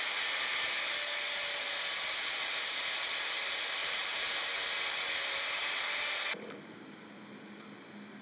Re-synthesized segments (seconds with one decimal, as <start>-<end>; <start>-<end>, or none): 3.8-4.4